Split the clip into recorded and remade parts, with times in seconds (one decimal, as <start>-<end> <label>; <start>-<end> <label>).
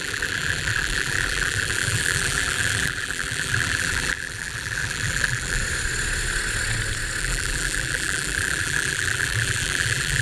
0.0-5.6 remade; 5.6-7.2 recorded; 7.2-10.2 remade